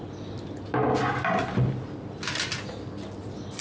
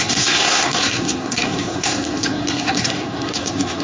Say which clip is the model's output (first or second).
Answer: second